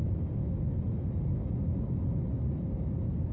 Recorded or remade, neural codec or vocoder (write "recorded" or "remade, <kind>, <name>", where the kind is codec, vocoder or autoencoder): recorded